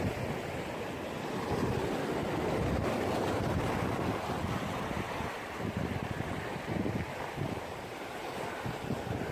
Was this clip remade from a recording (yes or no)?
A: no